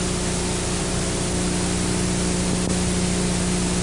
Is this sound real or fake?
real